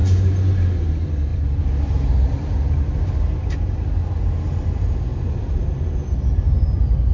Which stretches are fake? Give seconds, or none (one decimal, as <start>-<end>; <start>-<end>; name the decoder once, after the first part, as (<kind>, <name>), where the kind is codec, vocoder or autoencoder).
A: 5.1-5.7 (vocoder, BigVGAN v2)